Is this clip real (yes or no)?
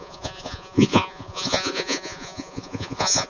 no